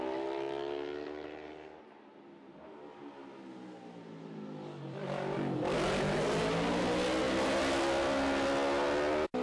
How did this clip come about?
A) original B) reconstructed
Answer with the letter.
A